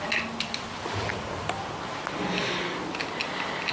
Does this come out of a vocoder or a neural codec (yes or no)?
no